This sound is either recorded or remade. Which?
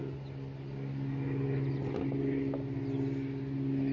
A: recorded